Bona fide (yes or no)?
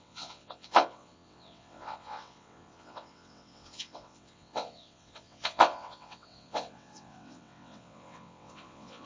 no